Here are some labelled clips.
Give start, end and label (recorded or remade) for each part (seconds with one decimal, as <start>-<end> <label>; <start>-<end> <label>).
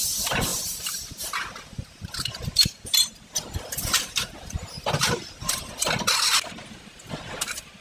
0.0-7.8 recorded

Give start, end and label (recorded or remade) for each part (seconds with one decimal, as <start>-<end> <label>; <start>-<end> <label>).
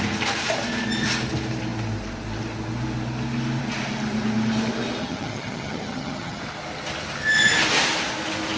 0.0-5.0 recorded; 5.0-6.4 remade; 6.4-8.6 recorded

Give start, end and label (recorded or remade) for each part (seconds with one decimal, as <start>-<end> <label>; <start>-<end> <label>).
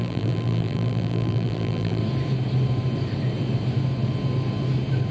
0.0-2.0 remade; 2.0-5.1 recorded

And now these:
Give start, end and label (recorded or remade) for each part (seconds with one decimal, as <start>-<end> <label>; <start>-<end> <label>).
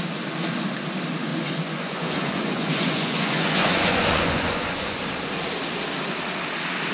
0.0-1.3 recorded; 1.3-5.0 remade; 5.0-6.9 recorded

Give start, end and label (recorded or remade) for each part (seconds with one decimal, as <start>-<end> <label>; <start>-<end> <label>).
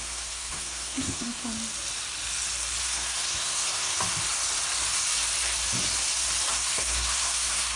0.0-1.4 remade; 1.4-2.8 recorded; 2.8-3.9 remade; 3.9-6.5 recorded; 6.5-7.8 remade